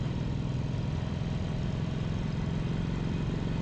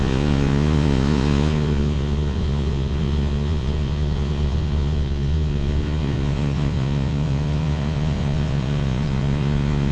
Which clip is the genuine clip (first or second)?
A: first